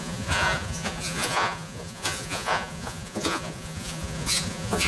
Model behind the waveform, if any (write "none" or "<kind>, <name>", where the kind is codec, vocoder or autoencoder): vocoder, Vocos